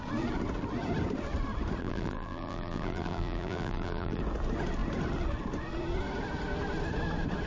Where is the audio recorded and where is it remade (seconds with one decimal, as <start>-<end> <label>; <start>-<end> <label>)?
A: 0.0-1.8 recorded; 1.8-4.2 remade; 4.2-7.5 recorded